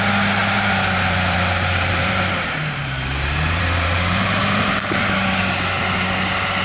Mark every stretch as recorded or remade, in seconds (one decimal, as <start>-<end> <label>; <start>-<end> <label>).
0.0-0.4 recorded; 0.4-4.4 remade; 4.4-6.6 recorded

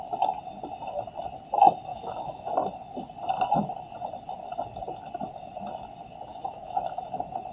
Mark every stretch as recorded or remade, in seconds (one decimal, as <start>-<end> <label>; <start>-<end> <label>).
0.0-1.9 recorded; 1.9-2.5 remade; 2.5-6.3 recorded; 6.3-7.0 remade; 7.0-7.5 recorded

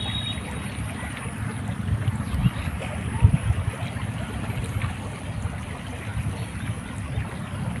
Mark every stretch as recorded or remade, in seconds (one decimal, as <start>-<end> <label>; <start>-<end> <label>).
0.0-7.8 recorded

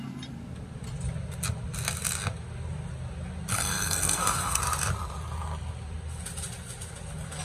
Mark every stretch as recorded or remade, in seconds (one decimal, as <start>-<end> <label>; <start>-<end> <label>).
0.0-3.5 recorded; 3.5-4.6 remade; 4.6-7.4 recorded

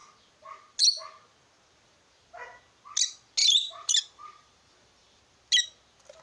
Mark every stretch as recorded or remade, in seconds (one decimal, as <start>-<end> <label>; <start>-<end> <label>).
0.0-3.4 recorded; 3.4-5.2 remade; 5.2-6.2 recorded

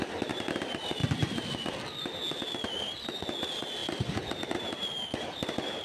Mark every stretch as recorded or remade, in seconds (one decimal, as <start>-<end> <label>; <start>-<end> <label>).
0.0-1.0 recorded; 1.0-1.7 remade; 1.7-5.8 recorded

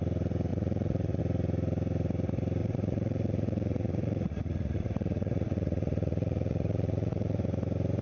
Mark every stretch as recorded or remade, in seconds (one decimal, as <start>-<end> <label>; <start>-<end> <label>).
0.0-0.5 recorded; 0.5-1.2 remade; 1.2-2.6 recorded; 2.6-7.4 remade; 7.4-8.0 recorded